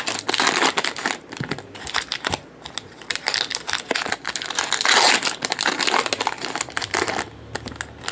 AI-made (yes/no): no